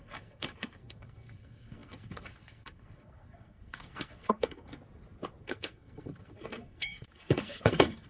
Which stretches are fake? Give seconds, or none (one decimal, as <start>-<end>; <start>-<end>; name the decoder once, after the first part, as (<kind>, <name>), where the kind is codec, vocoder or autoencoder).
0.0-4.8 (codec, SNAC); 5.4-8.1